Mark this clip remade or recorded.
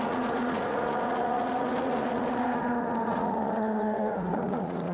remade